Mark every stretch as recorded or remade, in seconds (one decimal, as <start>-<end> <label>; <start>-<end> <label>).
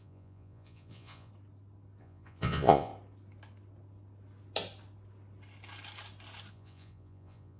0.0-1.3 remade; 1.3-2.0 recorded; 2.0-2.9 remade; 2.9-6.5 recorded; 6.5-7.6 remade